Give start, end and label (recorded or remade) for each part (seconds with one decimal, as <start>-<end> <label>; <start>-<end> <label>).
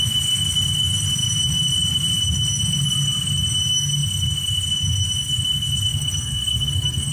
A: 0.0-5.9 recorded; 5.9-7.1 remade